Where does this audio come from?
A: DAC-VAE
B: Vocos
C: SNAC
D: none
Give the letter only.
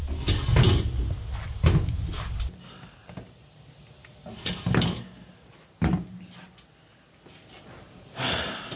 D